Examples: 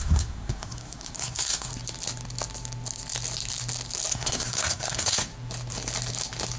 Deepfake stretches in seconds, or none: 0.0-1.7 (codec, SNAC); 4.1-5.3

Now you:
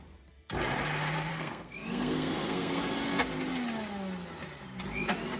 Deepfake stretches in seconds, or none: 1.3-2.8 (codec, SNAC)

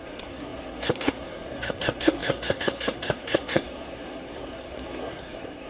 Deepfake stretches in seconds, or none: 0.0-5.7 (codec, SNAC)

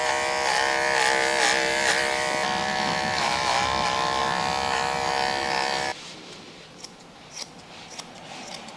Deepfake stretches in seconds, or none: none